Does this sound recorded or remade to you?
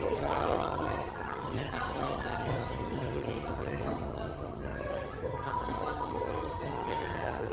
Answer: remade